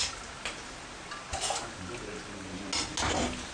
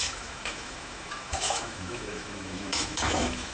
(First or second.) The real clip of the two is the first